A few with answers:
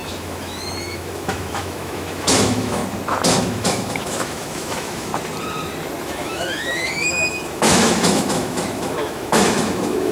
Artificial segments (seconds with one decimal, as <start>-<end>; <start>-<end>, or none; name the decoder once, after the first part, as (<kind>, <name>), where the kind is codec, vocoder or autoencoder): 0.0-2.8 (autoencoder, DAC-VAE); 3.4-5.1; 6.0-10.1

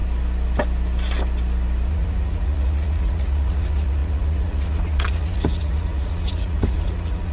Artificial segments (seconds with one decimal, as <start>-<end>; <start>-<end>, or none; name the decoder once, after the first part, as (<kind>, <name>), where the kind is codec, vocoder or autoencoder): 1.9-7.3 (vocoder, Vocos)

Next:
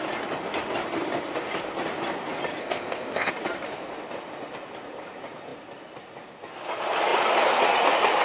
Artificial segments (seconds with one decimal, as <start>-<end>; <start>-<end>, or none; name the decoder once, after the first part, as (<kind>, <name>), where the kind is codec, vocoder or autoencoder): 2.6-3.3 (codec, ZipCodec)

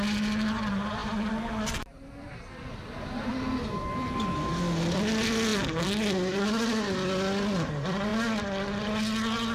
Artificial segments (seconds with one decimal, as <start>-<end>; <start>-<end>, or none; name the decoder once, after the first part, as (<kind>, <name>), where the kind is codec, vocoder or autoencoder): none

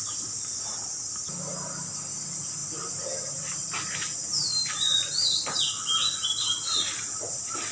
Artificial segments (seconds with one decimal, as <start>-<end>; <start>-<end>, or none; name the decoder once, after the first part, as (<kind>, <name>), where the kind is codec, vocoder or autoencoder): none

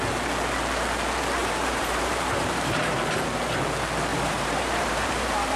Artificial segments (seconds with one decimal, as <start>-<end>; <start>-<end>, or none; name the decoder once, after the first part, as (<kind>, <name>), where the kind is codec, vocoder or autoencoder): 1.4-3.0 (vocoder, BigVGAN v2); 4.1-5.6

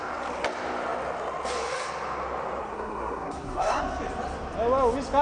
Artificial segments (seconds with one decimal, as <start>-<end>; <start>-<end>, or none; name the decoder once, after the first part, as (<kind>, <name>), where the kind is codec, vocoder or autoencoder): 2.6-3.8 (codec, SNAC)

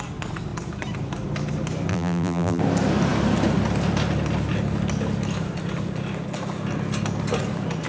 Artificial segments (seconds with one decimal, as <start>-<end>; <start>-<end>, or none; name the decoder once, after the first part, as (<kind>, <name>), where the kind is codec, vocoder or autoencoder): 1.9-2.6 (vocoder, BigVGAN v2)